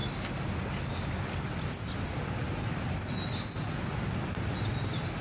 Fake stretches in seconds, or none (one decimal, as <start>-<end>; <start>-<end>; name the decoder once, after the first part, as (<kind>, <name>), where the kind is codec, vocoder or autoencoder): none